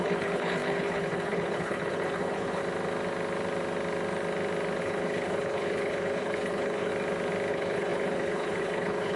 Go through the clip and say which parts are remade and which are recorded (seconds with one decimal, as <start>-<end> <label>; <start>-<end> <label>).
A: 0.0-2.6 remade; 2.6-4.8 recorded; 4.8-6.9 remade; 6.9-7.5 recorded; 7.5-9.2 remade